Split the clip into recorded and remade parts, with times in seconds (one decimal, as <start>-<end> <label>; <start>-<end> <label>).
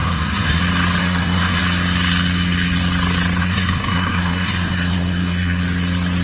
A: 0.0-0.6 remade; 0.6-1.0 recorded; 1.0-1.6 remade; 1.6-3.4 recorded; 3.4-5.6 remade; 5.6-6.2 recorded